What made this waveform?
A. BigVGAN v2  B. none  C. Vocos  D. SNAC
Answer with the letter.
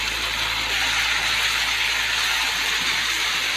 B